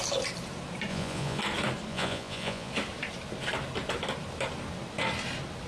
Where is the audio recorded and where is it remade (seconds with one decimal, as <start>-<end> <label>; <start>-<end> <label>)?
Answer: 0.0-0.9 recorded; 0.9-1.4 remade; 1.4-1.9 recorded; 1.9-2.7 remade; 2.7-5.7 recorded